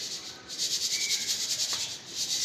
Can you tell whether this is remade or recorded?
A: recorded